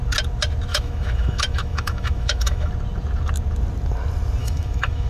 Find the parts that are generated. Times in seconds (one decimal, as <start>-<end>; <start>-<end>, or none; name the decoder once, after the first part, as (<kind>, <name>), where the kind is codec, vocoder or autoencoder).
0.7-2.7 (autoencoder, DAC-VAE); 4.4-5.1